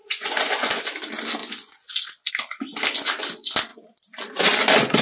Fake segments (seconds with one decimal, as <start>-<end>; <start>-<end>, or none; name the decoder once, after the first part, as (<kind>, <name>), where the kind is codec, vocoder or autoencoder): 0.0-0.8 (vocoder, Vocos); 1.4-2.3